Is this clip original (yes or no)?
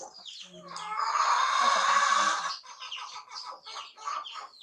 yes